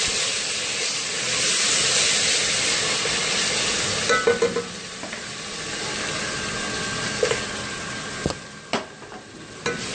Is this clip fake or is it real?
real